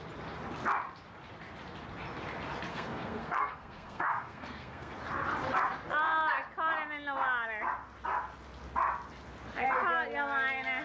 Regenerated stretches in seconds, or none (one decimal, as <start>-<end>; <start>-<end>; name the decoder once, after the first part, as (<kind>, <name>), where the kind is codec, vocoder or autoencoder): 2.7-4.9 (codec, SNAC)